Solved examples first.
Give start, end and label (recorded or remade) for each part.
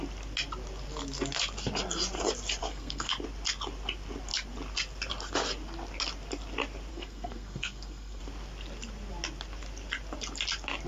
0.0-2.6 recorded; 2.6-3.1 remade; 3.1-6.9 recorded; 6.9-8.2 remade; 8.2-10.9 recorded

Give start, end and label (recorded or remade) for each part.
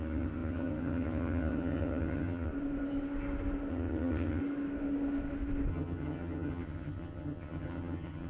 0.0-2.5 remade; 2.5-3.7 recorded; 3.7-4.4 remade; 4.4-5.7 recorded; 5.7-8.3 remade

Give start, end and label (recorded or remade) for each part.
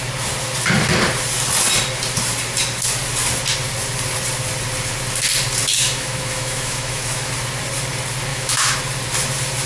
0.0-5.8 recorded; 5.8-7.3 remade; 7.3-8.3 recorded; 8.3-8.8 remade; 8.8-9.7 recorded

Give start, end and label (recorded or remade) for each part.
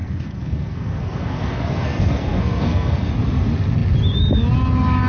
0.0-3.1 remade; 3.1-5.1 recorded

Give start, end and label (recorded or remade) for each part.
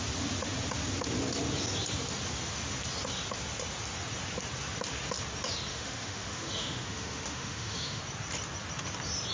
0.0-5.7 recorded; 5.7-8.0 remade; 8.0-9.3 recorded